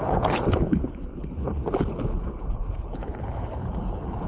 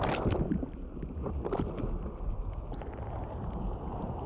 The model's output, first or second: first